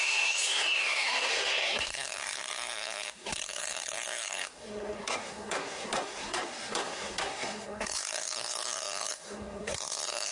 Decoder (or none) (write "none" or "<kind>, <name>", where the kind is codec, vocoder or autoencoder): codec, SNAC